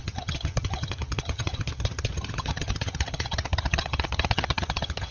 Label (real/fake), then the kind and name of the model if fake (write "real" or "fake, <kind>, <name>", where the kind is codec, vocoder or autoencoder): fake, vocoder, HiFi-GAN